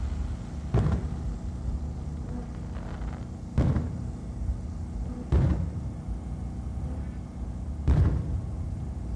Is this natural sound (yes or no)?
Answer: yes